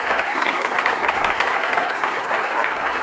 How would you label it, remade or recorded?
remade